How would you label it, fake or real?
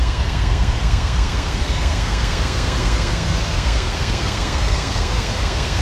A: fake